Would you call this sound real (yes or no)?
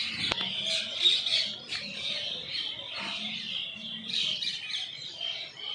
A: yes